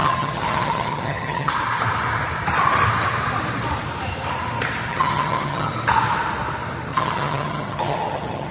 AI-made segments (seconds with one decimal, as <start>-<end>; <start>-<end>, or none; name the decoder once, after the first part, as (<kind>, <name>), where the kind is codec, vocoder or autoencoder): 0.0-1.5 (vocoder, HiFi-GAN); 4.9-5.7; 6.9-8.5